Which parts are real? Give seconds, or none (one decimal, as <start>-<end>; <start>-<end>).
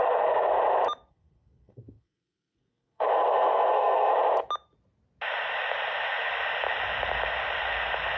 0.5-1.1; 4.1-8.2